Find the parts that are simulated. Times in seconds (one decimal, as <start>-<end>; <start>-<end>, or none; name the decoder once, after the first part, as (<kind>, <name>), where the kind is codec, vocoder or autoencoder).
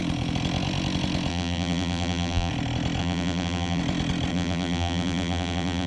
1.3-2.5 (vocoder, BigVGAN v2); 3.0-3.8; 4.3-5.9